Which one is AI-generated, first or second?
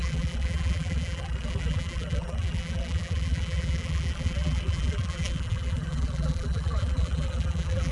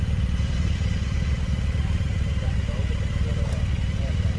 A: first